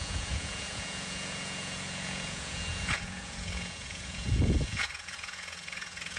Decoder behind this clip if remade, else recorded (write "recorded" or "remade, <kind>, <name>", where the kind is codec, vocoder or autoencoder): remade, vocoder, Vocos